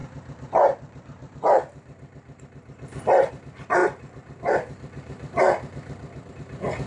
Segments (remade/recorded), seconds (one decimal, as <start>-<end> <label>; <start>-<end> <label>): 0.0-3.3 remade; 3.3-3.8 recorded; 3.8-6.3 remade; 6.3-6.9 recorded